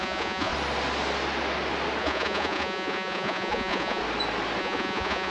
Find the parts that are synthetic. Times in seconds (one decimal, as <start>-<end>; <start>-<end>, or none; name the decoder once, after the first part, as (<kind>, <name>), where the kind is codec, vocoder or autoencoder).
0.0-0.5 (vocoder, Vocos); 2.0-4.0; 4.6-5.3